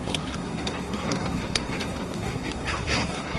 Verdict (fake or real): fake